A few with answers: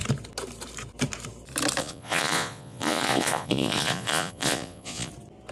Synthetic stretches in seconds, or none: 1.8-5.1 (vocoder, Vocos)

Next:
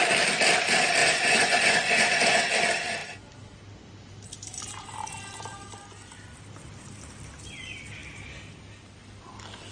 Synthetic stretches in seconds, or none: 1.0-2.4 (vocoder, Vocos)

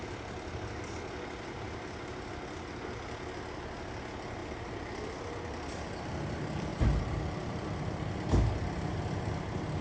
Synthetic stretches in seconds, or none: none

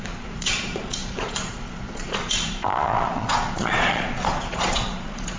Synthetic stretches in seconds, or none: 0.0-5.4 (vocoder, Vocos)

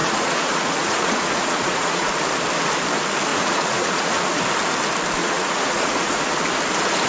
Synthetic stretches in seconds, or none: 0.0-2.1 (vocoder, Vocos); 3.3-4.4; 5.2-6.2

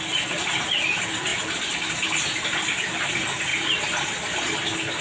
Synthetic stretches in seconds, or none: none